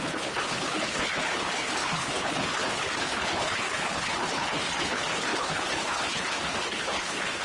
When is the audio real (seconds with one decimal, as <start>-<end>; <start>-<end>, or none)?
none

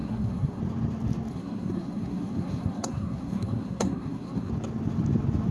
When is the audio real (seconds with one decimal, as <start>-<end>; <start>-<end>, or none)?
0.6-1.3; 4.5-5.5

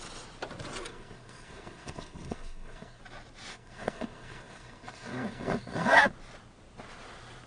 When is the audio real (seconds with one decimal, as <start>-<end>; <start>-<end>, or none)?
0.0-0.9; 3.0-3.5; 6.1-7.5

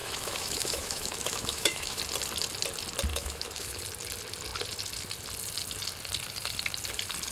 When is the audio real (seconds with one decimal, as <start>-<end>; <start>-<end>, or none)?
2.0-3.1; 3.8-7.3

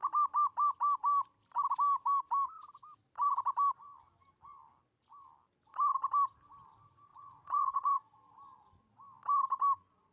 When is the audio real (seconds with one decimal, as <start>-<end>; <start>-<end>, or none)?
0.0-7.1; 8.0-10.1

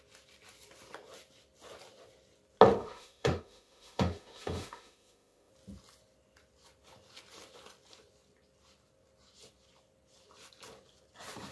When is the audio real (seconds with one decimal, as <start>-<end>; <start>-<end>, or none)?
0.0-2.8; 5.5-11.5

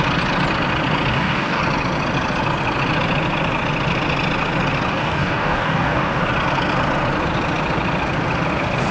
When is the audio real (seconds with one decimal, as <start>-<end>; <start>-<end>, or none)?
0.0-1.1; 1.6-4.9; 6.2-8.9

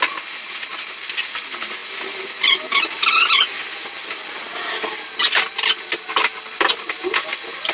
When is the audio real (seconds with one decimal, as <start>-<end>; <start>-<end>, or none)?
0.0-7.7